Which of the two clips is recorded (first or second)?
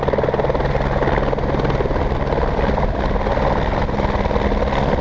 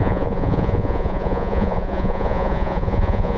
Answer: first